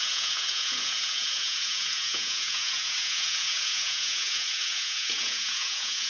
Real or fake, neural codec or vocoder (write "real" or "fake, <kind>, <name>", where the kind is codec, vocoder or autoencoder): fake, vocoder, Vocos